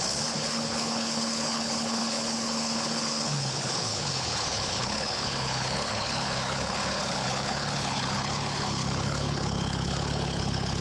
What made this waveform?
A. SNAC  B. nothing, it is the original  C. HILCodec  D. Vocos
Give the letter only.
C